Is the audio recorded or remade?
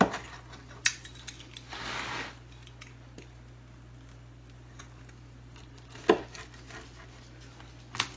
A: recorded